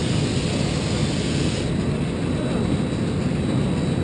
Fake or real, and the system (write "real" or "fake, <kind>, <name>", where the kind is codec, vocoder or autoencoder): real